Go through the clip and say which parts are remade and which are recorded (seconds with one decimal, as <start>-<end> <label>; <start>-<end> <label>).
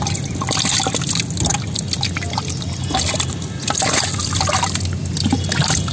0.0-5.9 recorded